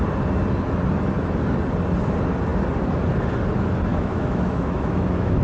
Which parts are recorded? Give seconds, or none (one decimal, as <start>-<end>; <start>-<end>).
0.0-3.9